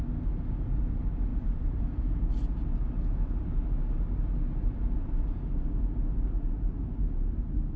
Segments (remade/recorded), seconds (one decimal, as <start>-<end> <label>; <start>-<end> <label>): 0.0-1.3 recorded; 1.3-2.3 remade; 2.3-7.8 recorded